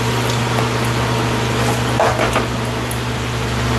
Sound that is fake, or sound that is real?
real